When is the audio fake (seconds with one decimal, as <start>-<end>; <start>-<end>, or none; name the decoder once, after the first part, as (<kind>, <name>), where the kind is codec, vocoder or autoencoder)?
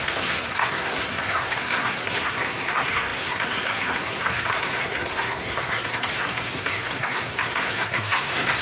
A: 0.0-8.6 (codec, SNAC)